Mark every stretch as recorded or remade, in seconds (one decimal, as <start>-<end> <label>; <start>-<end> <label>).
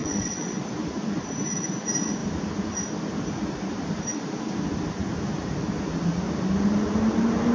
0.0-0.6 remade; 0.6-7.5 recorded